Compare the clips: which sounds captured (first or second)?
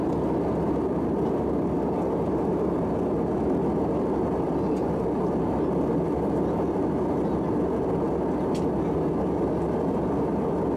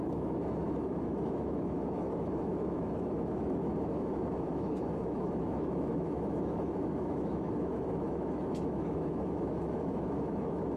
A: first